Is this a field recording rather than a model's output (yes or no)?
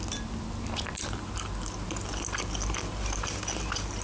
yes